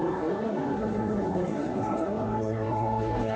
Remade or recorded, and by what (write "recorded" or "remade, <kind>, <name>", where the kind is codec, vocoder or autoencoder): remade, codec, SNAC